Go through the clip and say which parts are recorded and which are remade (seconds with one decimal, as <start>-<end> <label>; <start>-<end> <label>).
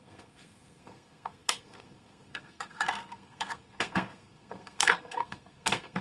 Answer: 0.0-6.0 remade